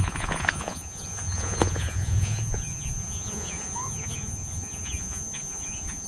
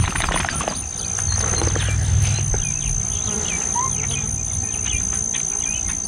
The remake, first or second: first